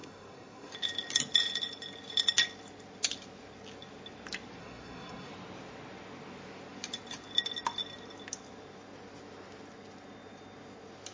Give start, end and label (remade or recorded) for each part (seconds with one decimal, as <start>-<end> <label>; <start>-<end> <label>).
0.0-0.7 remade; 0.7-4.6 recorded; 4.6-5.3 remade; 5.3-11.1 recorded